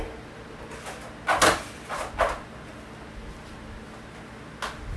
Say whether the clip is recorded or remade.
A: recorded